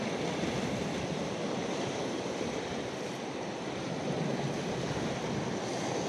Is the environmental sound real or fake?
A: fake